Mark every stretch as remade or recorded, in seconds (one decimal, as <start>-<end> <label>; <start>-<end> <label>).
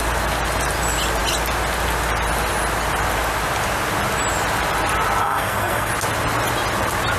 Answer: 0.0-5.2 recorded; 5.2-5.9 remade; 5.9-7.2 recorded